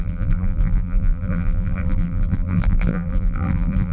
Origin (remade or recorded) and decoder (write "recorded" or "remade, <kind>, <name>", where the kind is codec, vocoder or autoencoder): remade, vocoder, BigVGAN v2